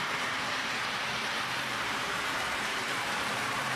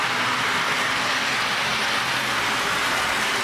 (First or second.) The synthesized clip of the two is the first